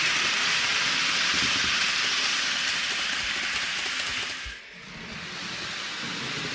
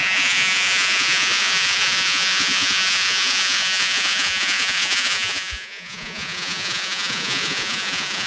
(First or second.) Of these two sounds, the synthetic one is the second